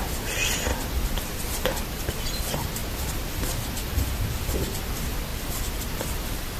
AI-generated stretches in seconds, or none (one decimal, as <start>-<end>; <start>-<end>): 0.7-1.6; 2.8-4.5